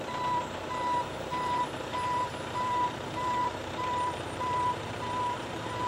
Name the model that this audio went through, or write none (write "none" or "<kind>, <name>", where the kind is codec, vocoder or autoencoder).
vocoder, BigVGAN v2